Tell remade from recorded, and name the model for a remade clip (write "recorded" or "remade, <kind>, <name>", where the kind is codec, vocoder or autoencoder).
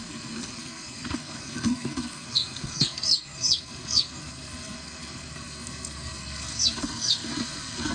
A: remade, codec, SNAC